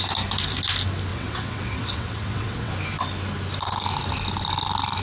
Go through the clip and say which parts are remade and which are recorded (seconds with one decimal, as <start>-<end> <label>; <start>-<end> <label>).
0.0-1.1 recorded; 1.1-2.7 remade; 2.7-5.0 recorded